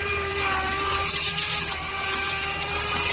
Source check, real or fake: fake